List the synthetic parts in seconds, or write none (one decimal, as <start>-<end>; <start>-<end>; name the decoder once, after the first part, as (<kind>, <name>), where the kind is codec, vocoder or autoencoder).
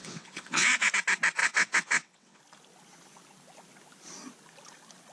0.0-0.9 (vocoder, WaveNeXt); 1.4-2.4